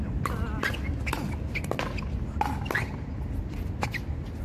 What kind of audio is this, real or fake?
real